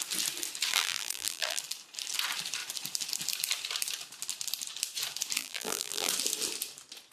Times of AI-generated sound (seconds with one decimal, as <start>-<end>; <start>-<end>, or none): 0.7-1.6; 5.4-6.1